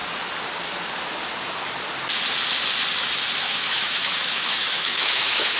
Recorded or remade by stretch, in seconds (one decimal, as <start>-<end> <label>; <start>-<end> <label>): 0.0-3.4 recorded; 3.4-5.6 remade